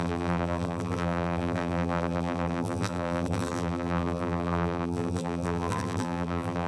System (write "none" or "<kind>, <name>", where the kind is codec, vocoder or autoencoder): vocoder, BigVGAN v2